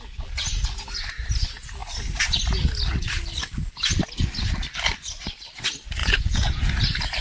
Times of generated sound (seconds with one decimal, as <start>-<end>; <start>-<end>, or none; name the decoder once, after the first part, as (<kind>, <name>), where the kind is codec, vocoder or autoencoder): 6.0-6.8 (vocoder, Vocos)